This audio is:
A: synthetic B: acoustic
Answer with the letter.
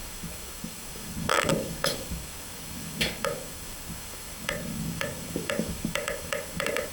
A